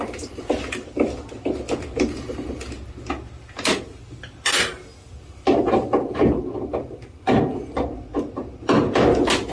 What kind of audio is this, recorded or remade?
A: remade